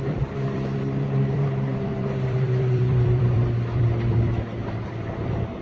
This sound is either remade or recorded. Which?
remade